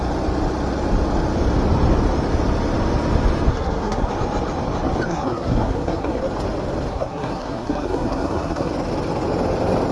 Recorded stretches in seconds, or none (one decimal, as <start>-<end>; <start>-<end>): 0.0-3.5; 4.1-5.1; 6.2-6.9; 8.7-9.9